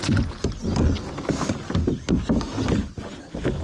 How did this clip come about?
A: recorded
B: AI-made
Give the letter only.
A